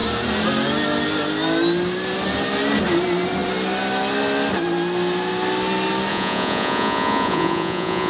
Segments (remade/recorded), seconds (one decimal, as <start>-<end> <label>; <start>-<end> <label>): 0.0-6.1 recorded; 6.1-8.1 remade